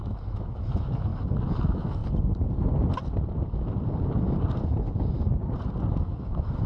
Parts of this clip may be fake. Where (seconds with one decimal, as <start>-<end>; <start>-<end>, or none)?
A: 0.0-1.1; 1.6-2.0; 6.0-6.7

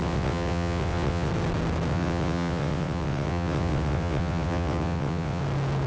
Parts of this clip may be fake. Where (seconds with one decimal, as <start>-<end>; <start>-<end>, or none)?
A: 0.0-1.3; 1.9-5.4

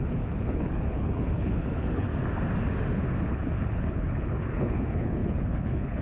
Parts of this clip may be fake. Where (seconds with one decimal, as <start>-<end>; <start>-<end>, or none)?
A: 0.0-2.1; 3.3-6.0

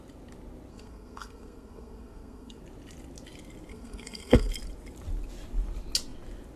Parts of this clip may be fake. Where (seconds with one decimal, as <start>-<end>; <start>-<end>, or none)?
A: 0.7-2.6; 3.7-4.5

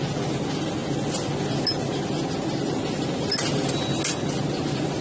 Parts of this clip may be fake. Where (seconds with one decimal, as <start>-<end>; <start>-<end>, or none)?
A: none